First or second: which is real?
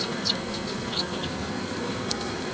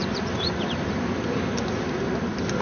second